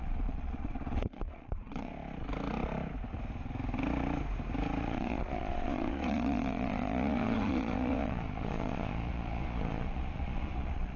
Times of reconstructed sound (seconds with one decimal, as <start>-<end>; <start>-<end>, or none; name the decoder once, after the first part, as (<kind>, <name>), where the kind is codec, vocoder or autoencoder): 0.0-1.9 (vocoder, Vocos); 4.8-11.0